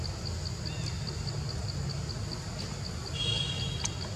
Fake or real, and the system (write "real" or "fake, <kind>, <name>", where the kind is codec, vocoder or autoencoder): real